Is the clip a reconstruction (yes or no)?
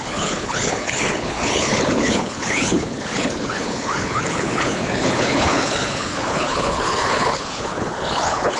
yes